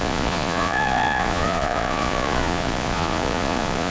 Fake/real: fake